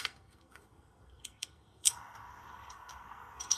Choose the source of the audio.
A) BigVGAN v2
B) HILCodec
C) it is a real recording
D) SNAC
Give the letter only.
D